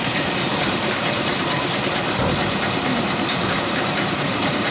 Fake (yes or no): yes